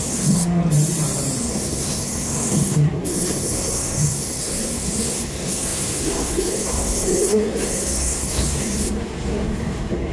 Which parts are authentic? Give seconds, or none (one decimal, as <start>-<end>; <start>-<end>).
0.6-1.4